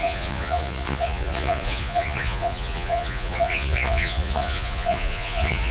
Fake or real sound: fake